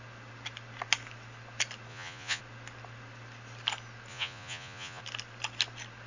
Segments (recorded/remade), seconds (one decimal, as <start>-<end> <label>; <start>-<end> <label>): 0.0-1.9 recorded; 1.9-2.4 remade; 2.4-4.1 recorded; 4.1-5.0 remade; 5.0-6.1 recorded

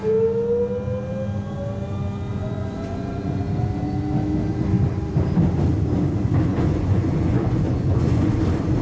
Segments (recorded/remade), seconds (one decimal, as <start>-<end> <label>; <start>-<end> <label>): 0.0-2.3 recorded; 2.3-3.4 remade; 3.4-6.5 recorded; 6.5-8.3 remade; 8.3-8.8 recorded

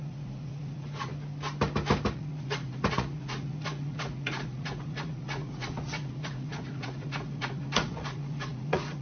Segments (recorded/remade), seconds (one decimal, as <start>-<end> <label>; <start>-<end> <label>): 0.0-1.1 remade; 1.1-2.1 recorded; 2.1-9.0 remade

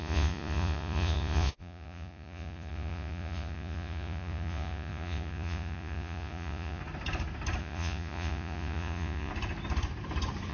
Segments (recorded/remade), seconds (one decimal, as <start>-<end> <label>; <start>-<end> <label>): 0.0-6.8 remade; 6.8-7.6 recorded; 7.6-9.3 remade; 9.3-10.5 recorded

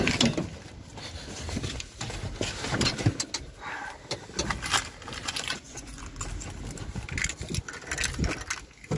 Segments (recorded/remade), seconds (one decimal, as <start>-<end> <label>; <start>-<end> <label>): 0.0-5.2 recorded; 5.2-6.0 remade; 6.0-9.0 recorded

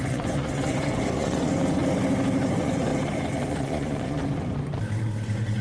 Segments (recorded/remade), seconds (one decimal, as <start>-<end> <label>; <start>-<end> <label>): 0.0-1.8 remade; 1.8-2.5 recorded; 2.5-2.9 remade; 2.9-3.5 recorded; 3.5-4.2 remade; 4.2-5.6 recorded

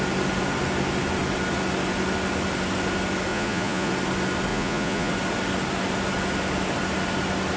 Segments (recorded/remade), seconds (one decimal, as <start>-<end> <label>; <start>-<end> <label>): 0.0-3.3 recorded; 3.3-3.9 remade; 3.9-4.5 recorded; 4.5-5.1 remade; 5.1-7.6 recorded

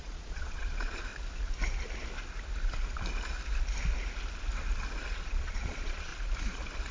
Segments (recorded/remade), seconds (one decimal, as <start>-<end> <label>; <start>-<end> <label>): 0.0-1.1 remade; 1.1-5.1 recorded; 5.1-6.1 remade; 6.1-6.9 recorded